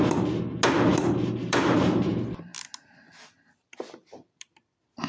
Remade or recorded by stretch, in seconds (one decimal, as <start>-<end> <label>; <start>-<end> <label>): 0.0-0.9 recorded; 0.9-2.1 remade; 2.1-5.1 recorded